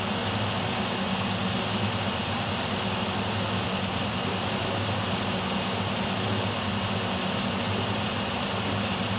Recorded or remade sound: recorded